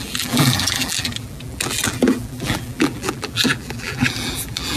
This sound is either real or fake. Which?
fake